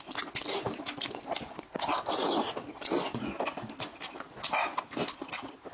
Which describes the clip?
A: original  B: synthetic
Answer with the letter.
A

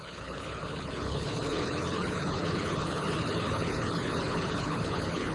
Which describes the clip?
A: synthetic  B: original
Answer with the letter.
A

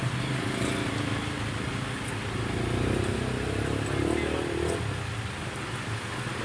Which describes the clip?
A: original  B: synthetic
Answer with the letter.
A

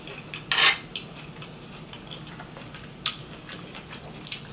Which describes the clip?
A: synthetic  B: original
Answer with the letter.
B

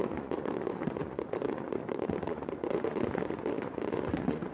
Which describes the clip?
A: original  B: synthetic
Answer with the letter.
B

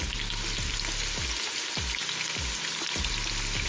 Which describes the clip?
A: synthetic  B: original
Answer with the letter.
B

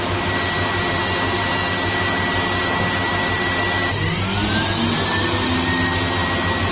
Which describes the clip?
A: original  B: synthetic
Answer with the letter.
A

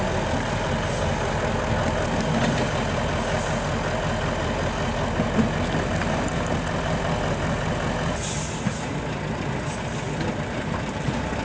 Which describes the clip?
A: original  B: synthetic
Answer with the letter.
A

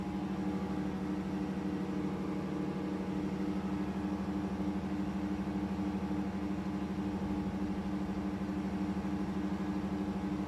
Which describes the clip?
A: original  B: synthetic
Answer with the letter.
A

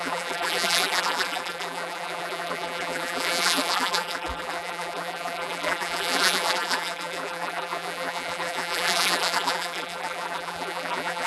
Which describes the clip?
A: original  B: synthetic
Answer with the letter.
B